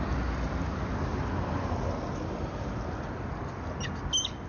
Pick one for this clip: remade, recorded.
recorded